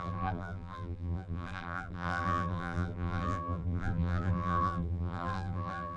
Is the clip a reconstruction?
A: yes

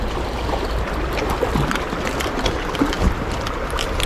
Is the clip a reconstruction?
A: no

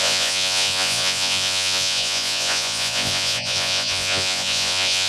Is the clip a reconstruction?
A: yes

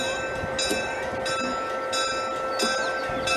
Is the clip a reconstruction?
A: no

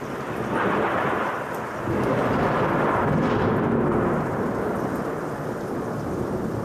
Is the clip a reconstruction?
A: no